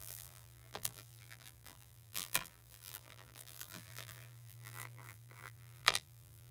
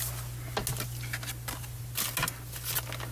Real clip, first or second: second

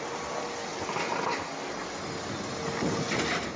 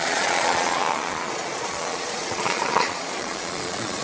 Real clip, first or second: first